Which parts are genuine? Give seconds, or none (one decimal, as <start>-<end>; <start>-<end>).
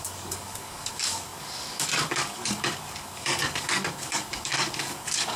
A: none